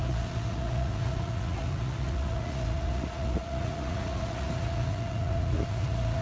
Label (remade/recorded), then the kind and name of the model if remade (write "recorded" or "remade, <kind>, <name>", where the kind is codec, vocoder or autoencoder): remade, vocoder, Vocos